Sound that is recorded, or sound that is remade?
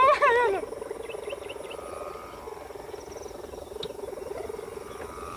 recorded